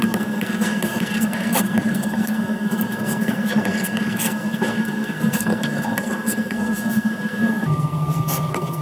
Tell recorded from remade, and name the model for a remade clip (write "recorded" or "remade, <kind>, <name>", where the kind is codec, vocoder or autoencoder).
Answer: remade, codec, SNAC